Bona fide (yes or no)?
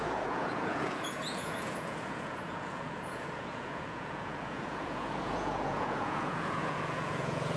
no